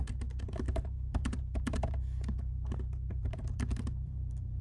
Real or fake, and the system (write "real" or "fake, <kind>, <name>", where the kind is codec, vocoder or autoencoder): fake, vocoder, BigVGAN v2